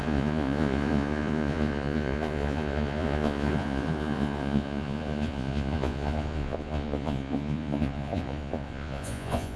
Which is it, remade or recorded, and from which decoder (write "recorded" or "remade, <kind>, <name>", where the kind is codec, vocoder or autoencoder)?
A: remade, vocoder, Vocos